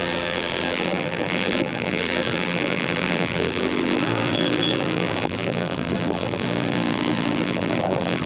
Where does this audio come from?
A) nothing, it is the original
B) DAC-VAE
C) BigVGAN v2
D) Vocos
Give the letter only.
C